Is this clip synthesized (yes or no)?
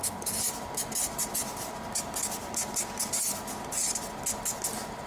no